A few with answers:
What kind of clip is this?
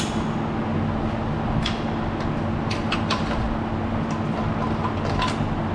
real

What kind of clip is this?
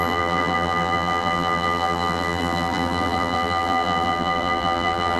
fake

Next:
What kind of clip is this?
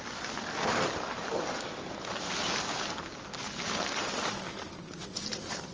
real